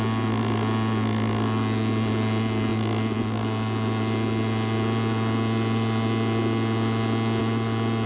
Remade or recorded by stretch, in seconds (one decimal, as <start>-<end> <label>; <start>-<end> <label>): 0.0-8.1 recorded